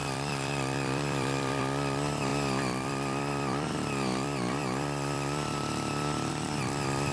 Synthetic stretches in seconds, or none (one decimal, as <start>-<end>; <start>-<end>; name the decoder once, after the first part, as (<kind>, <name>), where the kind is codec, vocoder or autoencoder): 0.0-1.6 (vocoder, BigVGAN v2); 2.3-6.3